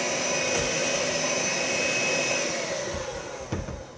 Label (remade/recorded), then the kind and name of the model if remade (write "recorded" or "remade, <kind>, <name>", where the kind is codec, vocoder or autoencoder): recorded